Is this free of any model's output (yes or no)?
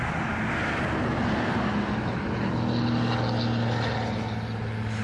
yes